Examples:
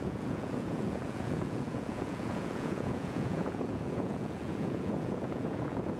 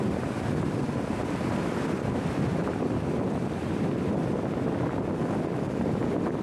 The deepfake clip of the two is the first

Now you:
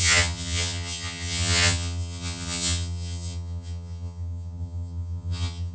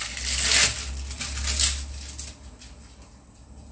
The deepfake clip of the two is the first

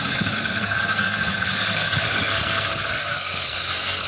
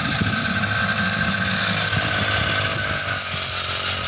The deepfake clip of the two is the first